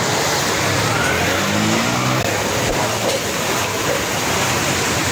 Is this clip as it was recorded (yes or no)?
yes